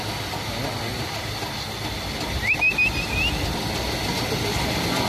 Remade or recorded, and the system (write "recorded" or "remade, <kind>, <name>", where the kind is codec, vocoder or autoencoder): recorded